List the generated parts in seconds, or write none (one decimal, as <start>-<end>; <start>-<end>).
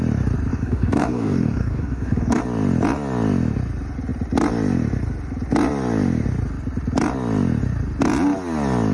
0.5-2.4